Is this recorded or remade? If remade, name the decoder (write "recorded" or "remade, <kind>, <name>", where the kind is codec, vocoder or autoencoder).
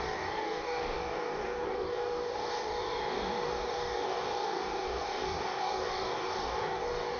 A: remade, codec, DAC